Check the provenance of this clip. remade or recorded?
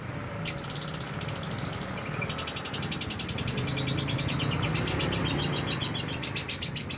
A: recorded